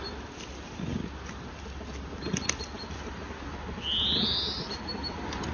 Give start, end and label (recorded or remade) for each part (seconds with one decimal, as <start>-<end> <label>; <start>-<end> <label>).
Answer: 0.0-5.5 recorded